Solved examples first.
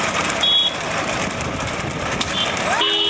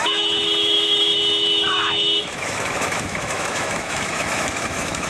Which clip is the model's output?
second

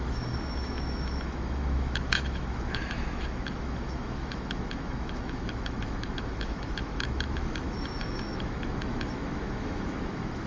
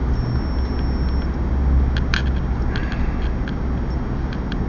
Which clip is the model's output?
first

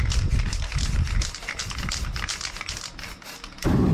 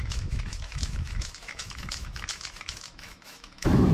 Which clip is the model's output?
second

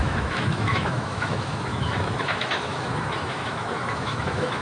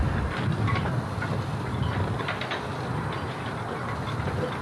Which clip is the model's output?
first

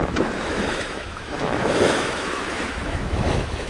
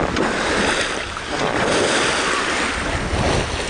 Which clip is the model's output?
first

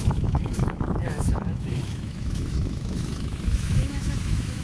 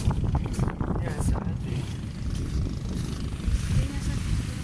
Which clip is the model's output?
first